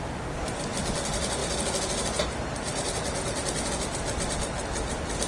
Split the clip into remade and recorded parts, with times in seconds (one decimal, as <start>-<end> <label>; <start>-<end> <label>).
0.0-5.3 recorded